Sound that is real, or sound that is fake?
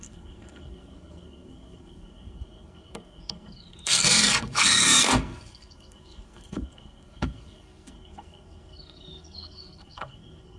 fake